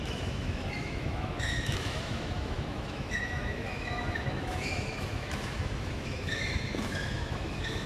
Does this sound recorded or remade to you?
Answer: remade